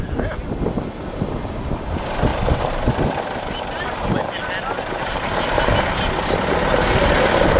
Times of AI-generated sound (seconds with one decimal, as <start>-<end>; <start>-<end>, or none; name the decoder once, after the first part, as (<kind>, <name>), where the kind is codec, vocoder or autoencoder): none